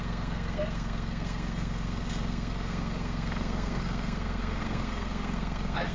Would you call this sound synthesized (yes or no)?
yes